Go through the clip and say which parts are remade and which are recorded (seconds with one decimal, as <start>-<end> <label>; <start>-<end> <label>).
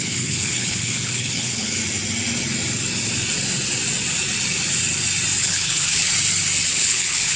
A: 0.0-1.8 remade; 1.8-5.4 recorded; 5.4-6.1 remade; 6.1-6.7 recorded; 6.7-7.4 remade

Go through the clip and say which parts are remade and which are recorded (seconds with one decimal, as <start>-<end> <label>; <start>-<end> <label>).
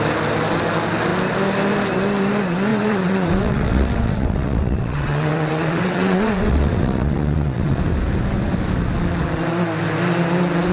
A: 0.0-2.7 recorded; 2.7-7.8 remade; 7.8-10.7 recorded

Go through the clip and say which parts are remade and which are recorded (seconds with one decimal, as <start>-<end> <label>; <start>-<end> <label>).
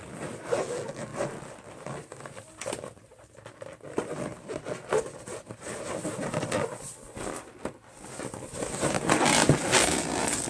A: 0.0-10.5 recorded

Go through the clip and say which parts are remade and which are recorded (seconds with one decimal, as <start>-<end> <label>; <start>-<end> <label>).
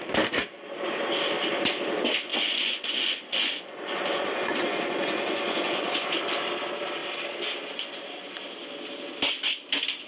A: 0.0-2.3 recorded; 2.3-6.2 remade; 6.2-10.1 recorded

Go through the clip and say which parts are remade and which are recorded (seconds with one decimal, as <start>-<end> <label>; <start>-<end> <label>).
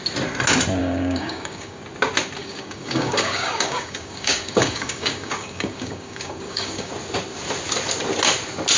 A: 0.0-0.8 recorded; 0.8-1.8 remade; 1.8-2.4 recorded; 2.4-6.9 remade; 6.9-8.8 recorded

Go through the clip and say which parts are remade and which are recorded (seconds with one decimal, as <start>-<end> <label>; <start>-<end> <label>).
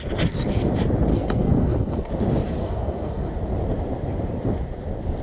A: 0.0-1.1 recorded; 1.1-2.1 remade; 2.1-2.6 recorded; 2.6-3.3 remade; 3.3-5.2 recorded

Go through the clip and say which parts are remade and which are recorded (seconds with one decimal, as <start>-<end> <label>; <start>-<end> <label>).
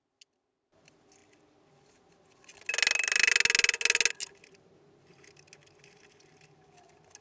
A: 0.0-7.2 recorded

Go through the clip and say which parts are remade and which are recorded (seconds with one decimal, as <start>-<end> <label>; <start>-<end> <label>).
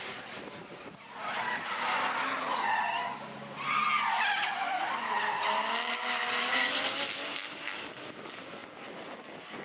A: 0.0-2.4 recorded; 2.4-2.9 remade; 2.9-9.6 recorded